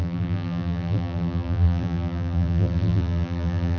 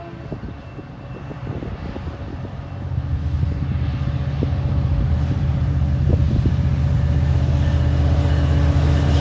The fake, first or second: first